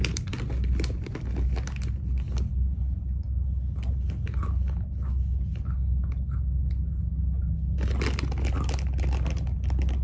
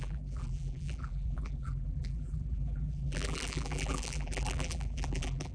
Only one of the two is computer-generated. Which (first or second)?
second